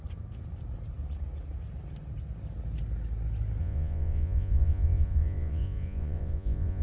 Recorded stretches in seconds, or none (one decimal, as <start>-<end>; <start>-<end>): 0.0-3.6